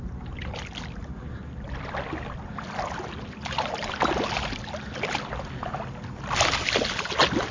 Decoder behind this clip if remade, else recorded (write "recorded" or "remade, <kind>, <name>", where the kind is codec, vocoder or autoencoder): recorded